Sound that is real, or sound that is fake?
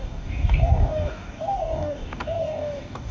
fake